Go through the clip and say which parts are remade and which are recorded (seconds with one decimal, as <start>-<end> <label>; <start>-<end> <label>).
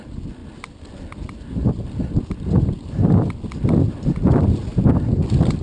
0.0-5.6 recorded